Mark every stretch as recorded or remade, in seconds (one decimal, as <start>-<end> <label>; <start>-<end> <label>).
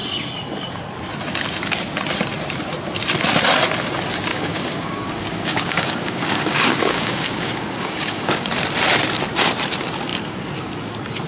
0.0-4.3 recorded; 4.3-8.5 remade; 8.5-11.3 recorded